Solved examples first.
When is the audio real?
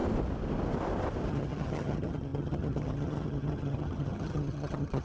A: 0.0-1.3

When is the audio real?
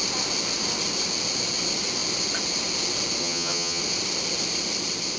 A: 0.0-3.2; 3.8-5.2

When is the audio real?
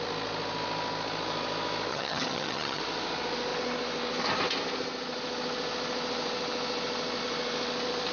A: 0.0-1.9; 2.8-8.1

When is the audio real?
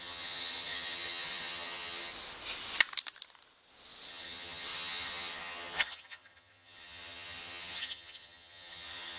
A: 2.1-4.1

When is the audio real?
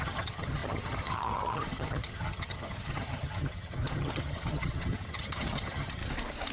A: 6.0-6.5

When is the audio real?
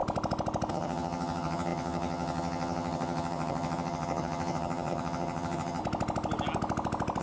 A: 0.0-0.7; 5.8-7.2